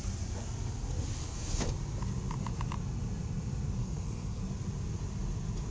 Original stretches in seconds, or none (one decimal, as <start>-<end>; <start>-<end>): 0.0-1.2; 1.7-3.8; 4.4-5.7